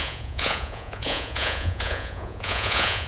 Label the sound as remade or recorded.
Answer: remade